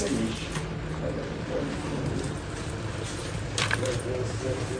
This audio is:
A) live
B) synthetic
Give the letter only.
A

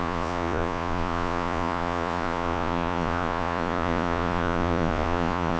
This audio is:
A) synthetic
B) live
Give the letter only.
A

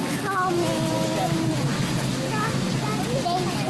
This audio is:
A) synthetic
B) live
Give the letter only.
B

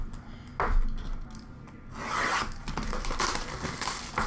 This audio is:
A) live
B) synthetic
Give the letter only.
A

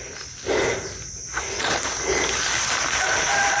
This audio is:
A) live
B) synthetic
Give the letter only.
A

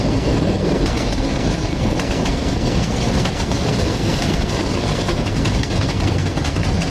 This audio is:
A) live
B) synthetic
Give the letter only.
B